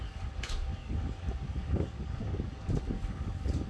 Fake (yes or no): yes